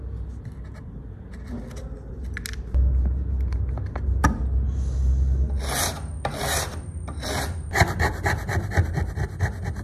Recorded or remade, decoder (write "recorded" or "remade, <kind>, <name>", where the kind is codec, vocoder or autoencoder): recorded